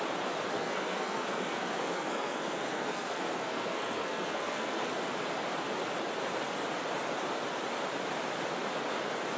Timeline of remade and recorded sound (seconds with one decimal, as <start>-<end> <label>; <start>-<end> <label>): 0.0-0.5 recorded; 0.5-4.9 remade; 4.9-9.4 recorded